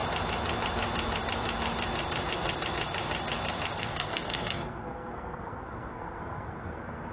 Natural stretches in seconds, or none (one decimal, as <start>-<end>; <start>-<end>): 0.0-3.7